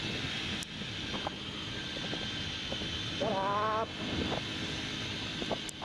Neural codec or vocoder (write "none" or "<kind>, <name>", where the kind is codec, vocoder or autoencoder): none